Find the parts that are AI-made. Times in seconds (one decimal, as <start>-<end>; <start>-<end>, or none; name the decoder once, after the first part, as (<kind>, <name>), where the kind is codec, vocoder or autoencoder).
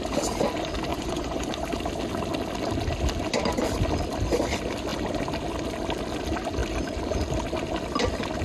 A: 0.9-1.6 (vocoder, Vocos)